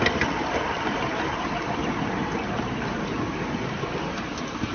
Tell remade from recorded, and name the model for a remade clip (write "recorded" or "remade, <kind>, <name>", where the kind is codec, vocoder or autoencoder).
recorded